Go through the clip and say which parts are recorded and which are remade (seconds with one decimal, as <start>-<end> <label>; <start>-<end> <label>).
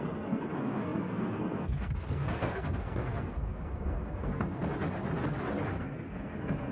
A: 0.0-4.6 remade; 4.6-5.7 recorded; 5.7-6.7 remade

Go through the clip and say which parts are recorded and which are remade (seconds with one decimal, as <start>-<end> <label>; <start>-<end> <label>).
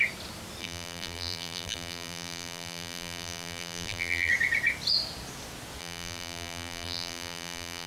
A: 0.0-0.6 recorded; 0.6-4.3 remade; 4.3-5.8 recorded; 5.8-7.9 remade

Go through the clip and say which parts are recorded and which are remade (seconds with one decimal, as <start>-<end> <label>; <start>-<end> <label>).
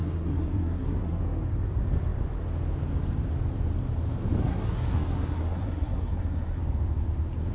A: 0.0-1.2 remade; 1.2-4.4 recorded; 4.4-6.6 remade; 6.6-7.5 recorded